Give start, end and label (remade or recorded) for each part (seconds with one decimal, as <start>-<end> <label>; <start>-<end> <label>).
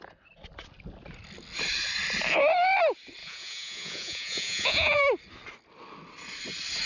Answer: 0.0-3.2 recorded; 3.2-5.0 remade; 5.0-6.9 recorded